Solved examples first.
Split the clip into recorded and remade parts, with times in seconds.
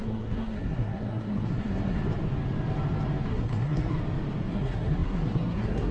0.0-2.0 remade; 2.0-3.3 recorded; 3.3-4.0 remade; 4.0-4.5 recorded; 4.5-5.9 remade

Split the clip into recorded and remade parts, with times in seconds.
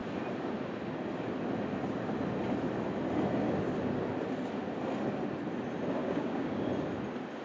0.0-6.0 recorded; 6.0-6.7 remade; 6.7-7.4 recorded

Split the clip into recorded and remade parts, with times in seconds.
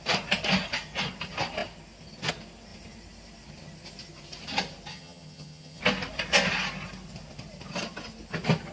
0.0-4.9 recorded; 4.9-5.8 remade; 5.8-8.7 recorded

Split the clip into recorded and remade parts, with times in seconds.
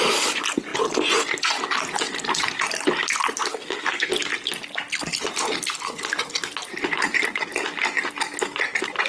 0.0-3.5 recorded; 3.5-4.1 remade; 4.1-9.1 recorded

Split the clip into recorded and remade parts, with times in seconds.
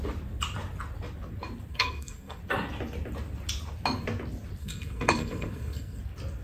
0.0-1.7 recorded; 1.7-2.4 remade; 2.4-4.6 recorded; 4.6-6.0 remade; 6.0-6.4 recorded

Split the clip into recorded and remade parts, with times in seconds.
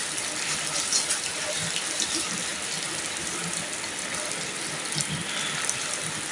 0.0-6.3 recorded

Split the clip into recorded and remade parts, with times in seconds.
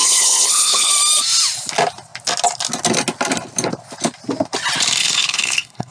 0.0-0.9 remade; 0.9-5.0 recorded; 5.0-5.9 remade